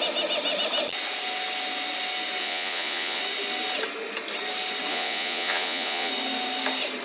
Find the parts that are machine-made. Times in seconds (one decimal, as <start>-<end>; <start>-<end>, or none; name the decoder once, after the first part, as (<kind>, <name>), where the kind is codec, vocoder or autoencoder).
2.4-3.2 (vocoder, Vocos); 4.9-6.1

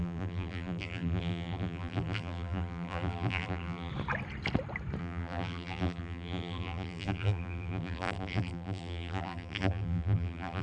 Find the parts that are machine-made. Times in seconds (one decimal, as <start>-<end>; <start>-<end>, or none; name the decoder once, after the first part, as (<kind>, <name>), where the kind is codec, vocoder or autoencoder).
0.0-3.9 (vocoder, BigVGAN v2); 5.0-10.6

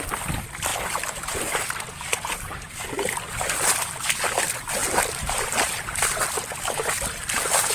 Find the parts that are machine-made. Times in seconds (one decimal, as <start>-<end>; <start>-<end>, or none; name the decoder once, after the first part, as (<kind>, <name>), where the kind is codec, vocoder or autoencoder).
0.7-2.7 (vocoder, BigVGAN v2); 4.8-5.4